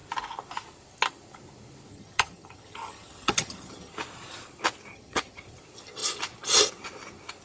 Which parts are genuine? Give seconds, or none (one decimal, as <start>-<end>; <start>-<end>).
0.0-1.9; 3.9-4.9; 5.4-7.4